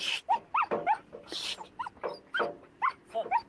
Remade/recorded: recorded